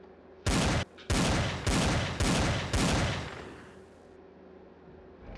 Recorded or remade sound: recorded